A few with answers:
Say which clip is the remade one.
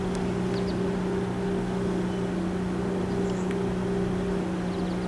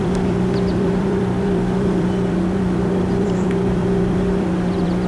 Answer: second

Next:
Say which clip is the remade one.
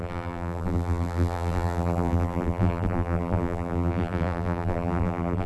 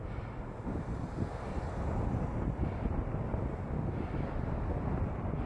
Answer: first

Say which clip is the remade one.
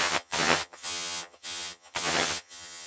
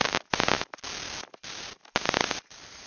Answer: first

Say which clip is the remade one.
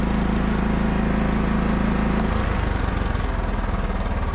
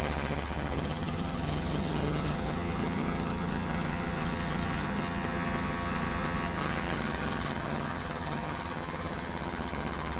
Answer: second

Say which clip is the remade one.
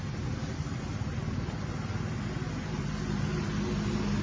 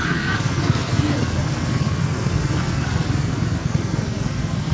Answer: second